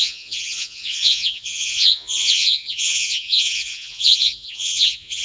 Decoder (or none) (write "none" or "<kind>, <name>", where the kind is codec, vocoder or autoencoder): vocoder, Vocos